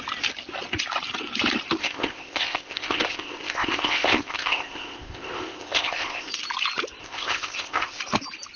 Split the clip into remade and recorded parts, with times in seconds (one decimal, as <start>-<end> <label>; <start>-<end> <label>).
0.0-1.8 recorded; 1.8-6.3 remade; 6.3-7.0 recorded; 7.0-8.0 remade; 8.0-8.6 recorded